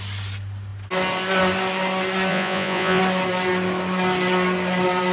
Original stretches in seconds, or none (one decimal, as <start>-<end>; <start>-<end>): 0.0-2.3; 3.0-5.1